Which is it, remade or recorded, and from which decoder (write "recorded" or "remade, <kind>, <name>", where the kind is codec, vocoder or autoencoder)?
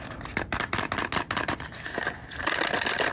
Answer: recorded